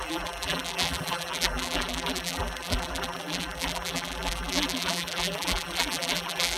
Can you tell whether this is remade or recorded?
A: remade